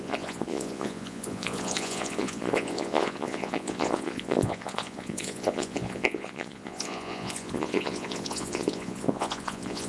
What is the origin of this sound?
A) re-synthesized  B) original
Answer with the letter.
A